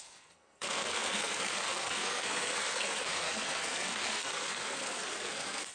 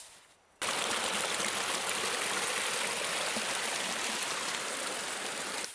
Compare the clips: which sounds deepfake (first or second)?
first